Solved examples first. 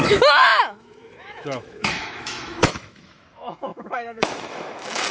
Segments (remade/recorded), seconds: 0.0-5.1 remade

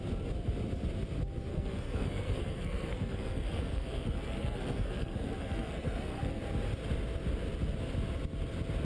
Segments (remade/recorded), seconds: 0.0-1.5 recorded; 1.5-6.4 remade; 6.4-8.8 recorded